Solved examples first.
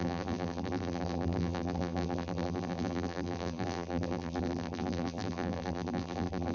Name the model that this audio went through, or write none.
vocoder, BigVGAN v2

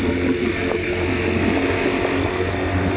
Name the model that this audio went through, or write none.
none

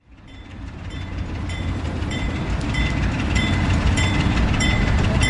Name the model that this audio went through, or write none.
vocoder, BigVGAN v2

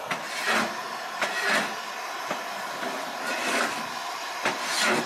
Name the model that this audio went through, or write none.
none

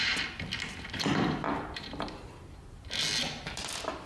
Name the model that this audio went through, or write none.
none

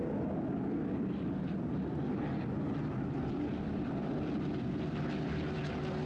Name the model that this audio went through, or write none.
none